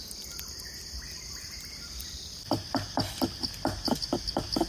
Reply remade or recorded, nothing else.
recorded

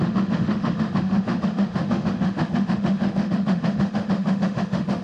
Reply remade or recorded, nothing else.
remade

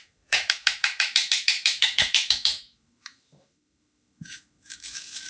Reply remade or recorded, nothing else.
remade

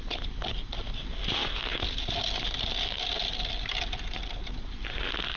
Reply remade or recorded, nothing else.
recorded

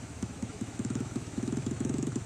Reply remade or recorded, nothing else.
remade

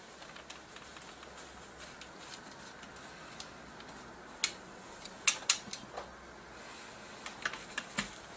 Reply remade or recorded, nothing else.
recorded